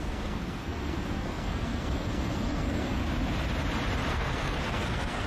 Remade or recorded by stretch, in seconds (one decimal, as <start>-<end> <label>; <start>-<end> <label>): 0.0-3.0 remade; 3.0-4.1 recorded; 4.1-5.3 remade